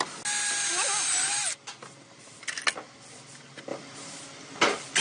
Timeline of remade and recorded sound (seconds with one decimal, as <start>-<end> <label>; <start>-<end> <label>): 0.0-5.0 recorded